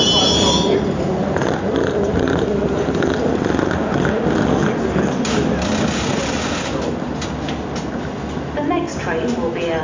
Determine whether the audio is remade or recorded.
recorded